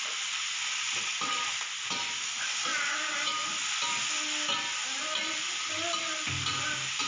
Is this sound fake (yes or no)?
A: no